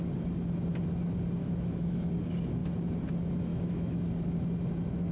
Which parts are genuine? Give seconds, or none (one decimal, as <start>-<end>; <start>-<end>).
0.0-1.4; 2.1-3.5; 4.0-5.1